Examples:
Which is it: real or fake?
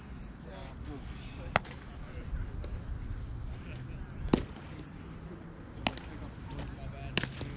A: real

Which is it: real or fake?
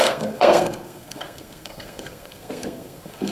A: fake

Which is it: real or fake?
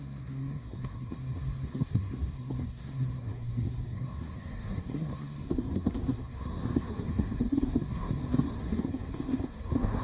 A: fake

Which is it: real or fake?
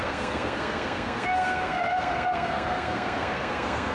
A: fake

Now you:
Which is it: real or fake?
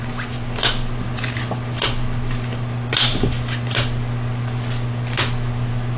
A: real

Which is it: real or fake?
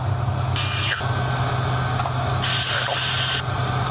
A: real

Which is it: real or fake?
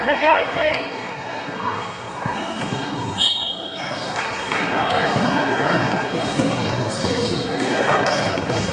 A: fake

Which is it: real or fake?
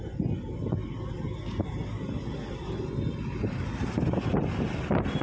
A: real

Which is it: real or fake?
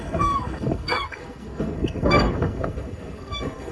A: fake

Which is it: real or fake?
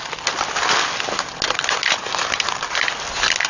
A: real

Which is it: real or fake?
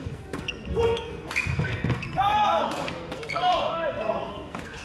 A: fake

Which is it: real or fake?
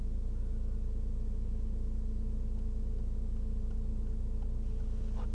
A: real